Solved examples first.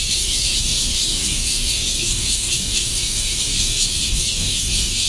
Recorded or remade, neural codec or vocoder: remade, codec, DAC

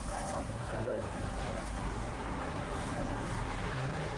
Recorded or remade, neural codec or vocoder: remade, codec, SNAC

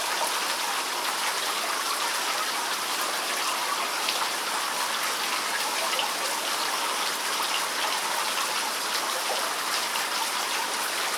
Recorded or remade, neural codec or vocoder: recorded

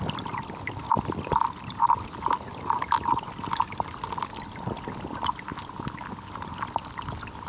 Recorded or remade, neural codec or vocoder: recorded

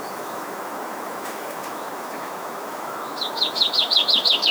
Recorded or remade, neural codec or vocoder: remade, autoencoder, DAC-VAE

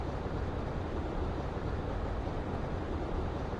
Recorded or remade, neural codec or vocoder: recorded